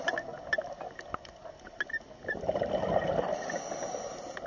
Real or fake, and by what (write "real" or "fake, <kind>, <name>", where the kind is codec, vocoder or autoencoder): real